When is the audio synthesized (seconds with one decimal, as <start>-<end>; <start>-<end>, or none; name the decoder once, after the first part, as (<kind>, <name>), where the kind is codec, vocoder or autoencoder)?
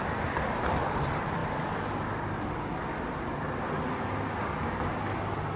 none